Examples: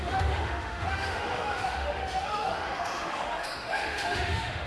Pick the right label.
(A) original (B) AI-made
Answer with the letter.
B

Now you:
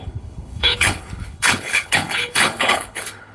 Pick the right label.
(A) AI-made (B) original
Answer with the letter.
A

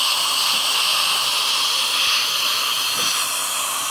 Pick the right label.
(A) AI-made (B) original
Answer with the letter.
B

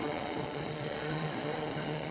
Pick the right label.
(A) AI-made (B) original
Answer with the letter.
A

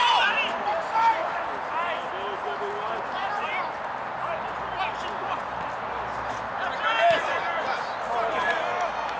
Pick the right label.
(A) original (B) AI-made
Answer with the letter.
A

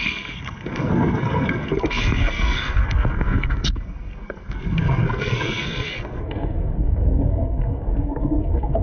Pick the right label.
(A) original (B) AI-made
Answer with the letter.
B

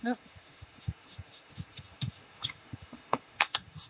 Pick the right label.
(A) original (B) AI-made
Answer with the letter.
B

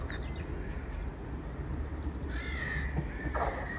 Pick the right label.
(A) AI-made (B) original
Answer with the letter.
B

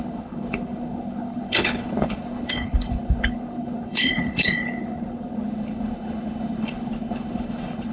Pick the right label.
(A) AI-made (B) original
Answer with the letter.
A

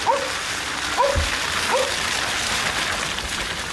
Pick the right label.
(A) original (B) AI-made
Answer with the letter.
A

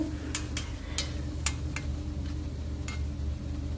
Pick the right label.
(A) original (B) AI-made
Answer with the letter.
A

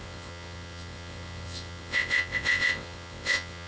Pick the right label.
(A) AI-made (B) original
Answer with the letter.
A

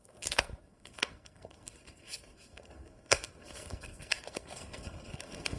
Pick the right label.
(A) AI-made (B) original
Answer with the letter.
A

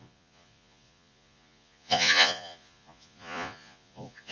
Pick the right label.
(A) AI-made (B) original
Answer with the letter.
A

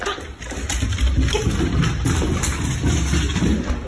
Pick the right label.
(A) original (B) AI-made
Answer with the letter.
A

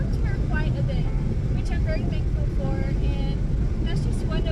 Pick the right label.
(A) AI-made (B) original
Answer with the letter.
B